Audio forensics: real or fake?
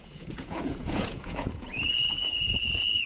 fake